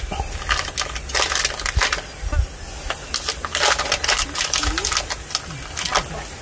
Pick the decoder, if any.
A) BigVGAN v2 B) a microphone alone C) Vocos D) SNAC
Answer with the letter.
B